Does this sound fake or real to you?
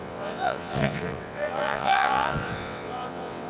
fake